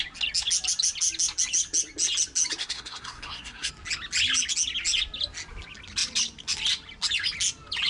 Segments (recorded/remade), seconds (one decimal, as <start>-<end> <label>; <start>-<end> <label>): 0.0-2.6 recorded; 2.6-3.7 remade; 3.7-7.9 recorded